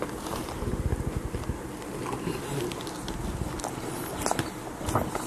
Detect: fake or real real